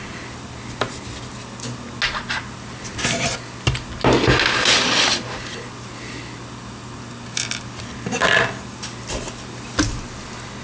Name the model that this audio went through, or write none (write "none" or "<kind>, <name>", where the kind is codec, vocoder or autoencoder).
none